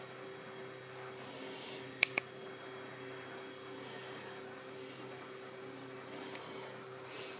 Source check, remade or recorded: recorded